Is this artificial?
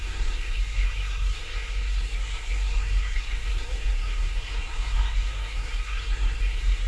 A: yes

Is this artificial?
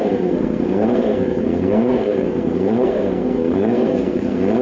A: yes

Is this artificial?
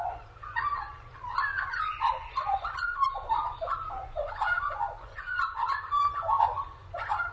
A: yes